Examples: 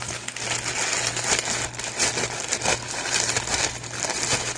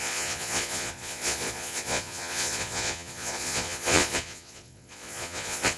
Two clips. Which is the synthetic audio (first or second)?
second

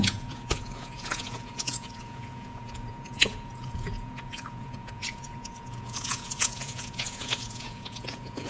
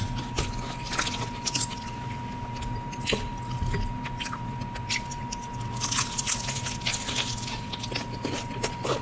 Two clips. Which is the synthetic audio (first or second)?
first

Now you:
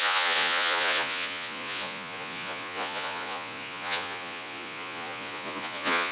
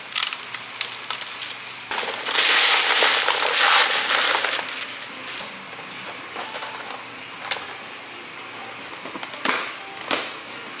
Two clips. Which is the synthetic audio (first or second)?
first